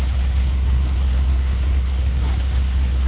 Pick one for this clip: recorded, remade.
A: remade